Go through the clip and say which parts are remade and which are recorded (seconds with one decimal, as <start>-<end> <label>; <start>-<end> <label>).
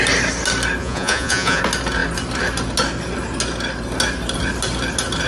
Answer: 0.0-0.8 recorded; 0.8-1.6 remade; 1.6-5.3 recorded